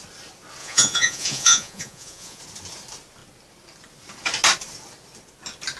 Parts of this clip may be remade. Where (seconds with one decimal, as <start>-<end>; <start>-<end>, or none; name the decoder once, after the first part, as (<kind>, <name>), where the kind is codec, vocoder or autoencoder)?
0.6-2.4 (vocoder, Vocos)